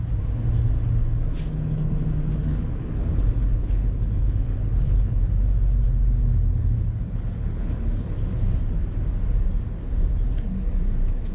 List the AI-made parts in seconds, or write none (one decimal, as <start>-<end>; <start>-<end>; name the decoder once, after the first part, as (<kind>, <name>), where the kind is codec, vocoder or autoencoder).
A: 2.5-5.2 (codec, HILCodec); 6.2-8.3